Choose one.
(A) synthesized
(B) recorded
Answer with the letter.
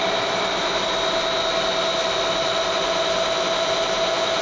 B